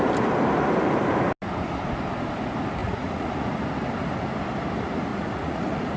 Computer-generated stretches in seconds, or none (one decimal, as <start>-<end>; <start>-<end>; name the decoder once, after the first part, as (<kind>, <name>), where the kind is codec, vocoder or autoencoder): 2.8-3.5 (vocoder, Vocos); 5.1-6.0